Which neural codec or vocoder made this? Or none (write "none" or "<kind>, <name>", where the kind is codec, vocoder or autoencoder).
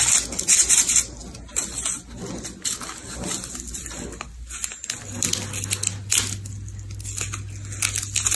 none